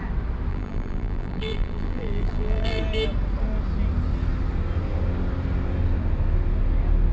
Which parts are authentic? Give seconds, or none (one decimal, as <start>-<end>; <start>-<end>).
0.0-0.5; 2.8-7.1